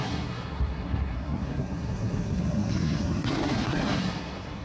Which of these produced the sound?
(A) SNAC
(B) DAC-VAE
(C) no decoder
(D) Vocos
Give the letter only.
A